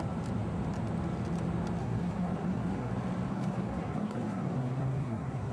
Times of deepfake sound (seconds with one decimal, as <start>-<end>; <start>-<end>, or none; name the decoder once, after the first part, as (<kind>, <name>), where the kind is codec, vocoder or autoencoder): 1.8-2.9 (codec, SNAC); 3.3-5.5